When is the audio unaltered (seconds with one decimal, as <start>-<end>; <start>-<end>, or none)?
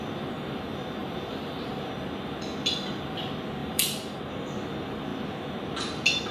0.0-1.0; 1.9-3.6; 4.2-6.3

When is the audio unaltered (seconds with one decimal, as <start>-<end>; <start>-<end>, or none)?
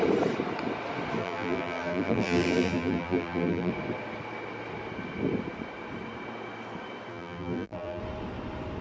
0.0-1.2; 3.7-7.1; 8.0-8.8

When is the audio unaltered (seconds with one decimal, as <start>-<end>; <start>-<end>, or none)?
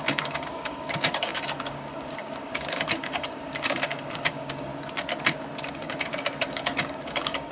4.7-5.7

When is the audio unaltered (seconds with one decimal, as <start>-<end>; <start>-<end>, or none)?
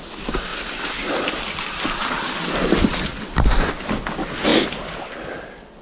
0.0-5.8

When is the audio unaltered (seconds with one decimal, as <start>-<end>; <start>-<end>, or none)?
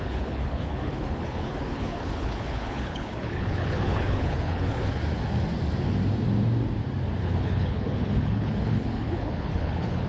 5.0-7.2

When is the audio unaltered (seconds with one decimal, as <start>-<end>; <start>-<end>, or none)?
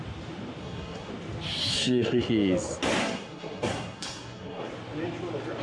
0.0-0.6; 1.1-1.6; 2.2-3.0; 4.7-5.6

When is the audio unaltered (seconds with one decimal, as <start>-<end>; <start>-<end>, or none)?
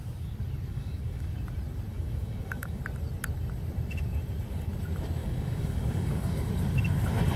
0.0-0.7; 1.3-1.9; 2.8-5.2; 6.5-7.4